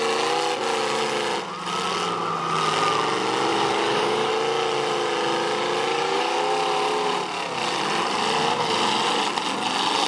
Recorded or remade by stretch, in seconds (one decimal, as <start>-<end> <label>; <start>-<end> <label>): 0.0-3.5 recorded; 3.5-4.3 remade; 4.3-5.9 recorded; 5.9-6.4 remade; 6.4-10.1 recorded